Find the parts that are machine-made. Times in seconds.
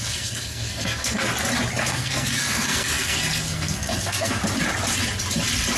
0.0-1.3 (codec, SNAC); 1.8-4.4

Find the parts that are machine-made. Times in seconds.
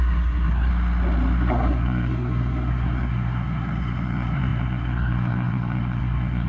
0.0-0.7 (codec, SNAC); 1.5-6.5